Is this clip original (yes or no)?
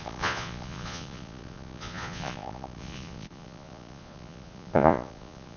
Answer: no